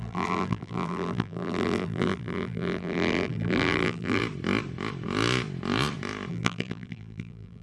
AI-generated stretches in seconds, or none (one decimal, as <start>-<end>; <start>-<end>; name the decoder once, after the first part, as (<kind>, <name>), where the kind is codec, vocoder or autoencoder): 0.0-4.2 (vocoder, BigVGAN v2); 6.3-7.6